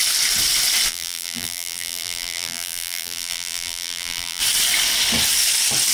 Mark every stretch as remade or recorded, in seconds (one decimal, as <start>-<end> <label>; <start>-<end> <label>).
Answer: 0.0-0.9 recorded; 0.9-4.4 remade; 4.4-5.9 recorded